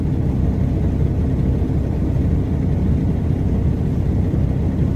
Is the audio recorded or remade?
recorded